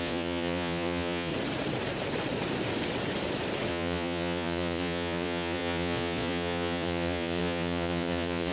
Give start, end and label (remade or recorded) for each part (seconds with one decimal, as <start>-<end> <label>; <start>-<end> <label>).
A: 0.0-1.3 remade; 1.3-3.7 recorded; 3.7-8.5 remade